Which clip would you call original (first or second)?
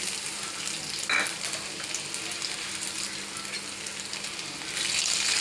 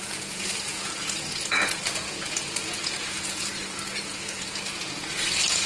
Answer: first